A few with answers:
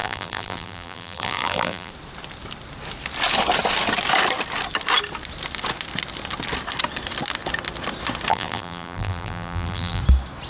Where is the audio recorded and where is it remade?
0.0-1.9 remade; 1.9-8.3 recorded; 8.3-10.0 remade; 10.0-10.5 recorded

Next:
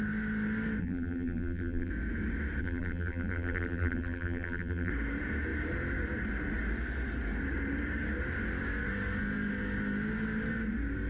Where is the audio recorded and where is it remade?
0.0-0.8 recorded; 0.8-1.9 remade; 1.9-2.6 recorded; 2.6-4.9 remade; 4.9-11.1 recorded